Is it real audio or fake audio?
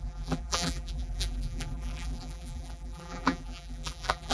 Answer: fake